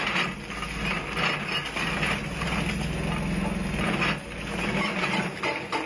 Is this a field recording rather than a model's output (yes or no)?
yes